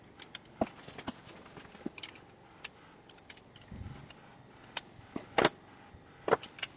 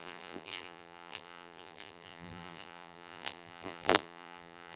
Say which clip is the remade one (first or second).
second